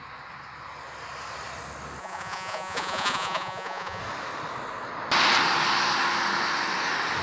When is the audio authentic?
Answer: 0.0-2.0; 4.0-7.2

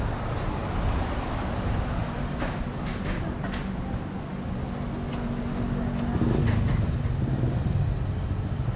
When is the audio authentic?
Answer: 0.0-8.8

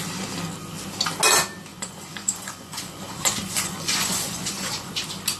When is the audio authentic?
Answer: 0.0-1.7; 4.9-5.4